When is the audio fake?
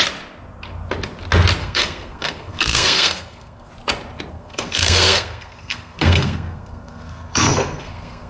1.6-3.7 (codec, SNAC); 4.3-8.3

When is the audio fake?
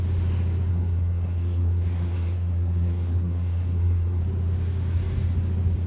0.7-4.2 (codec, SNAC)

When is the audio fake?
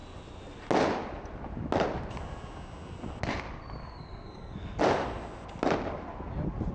3.8-4.8 (codec, SNAC)